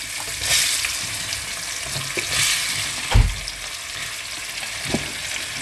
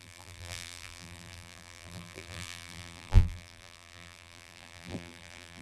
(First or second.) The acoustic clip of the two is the first